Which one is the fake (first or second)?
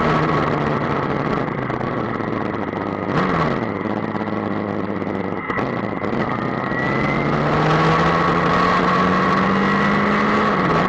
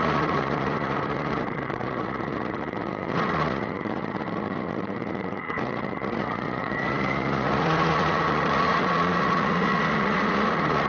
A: second